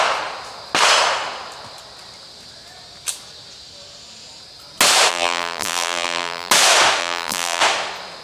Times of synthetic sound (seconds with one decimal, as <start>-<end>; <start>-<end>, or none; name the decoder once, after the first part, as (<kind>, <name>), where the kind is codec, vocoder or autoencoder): 5.1-6.5 (vocoder, BigVGAN v2); 7.0-7.6